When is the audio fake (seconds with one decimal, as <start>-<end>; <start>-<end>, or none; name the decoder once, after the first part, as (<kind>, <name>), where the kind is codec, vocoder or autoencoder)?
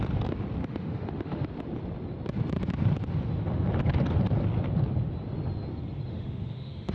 0.6-1.4 (autoencoder, DAC-VAE); 6.1-6.9